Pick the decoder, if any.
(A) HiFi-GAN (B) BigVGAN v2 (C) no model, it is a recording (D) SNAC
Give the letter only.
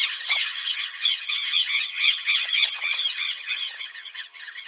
A